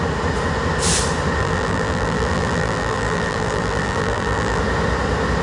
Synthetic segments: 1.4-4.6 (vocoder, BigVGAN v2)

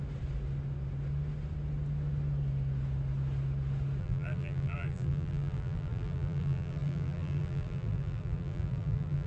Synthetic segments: 4.0-9.3 (vocoder, BigVGAN v2)

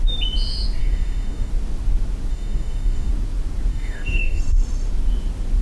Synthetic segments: 0.8-1.5 (codec, DAC); 2.3-3.1; 3.7-4.4